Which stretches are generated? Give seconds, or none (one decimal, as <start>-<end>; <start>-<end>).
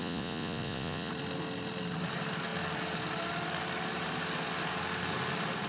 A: 0.0-1.1